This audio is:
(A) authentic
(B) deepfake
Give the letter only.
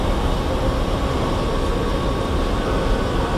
A